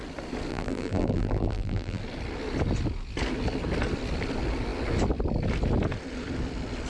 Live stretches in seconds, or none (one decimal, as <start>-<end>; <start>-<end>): 0.0-0.5; 2.0-6.9